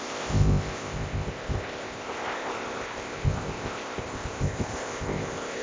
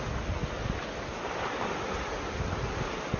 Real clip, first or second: second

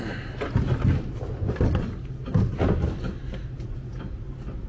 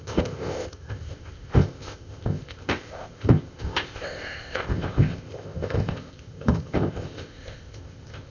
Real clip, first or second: first